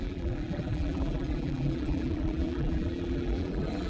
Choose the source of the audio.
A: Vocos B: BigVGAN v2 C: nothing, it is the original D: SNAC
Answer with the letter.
B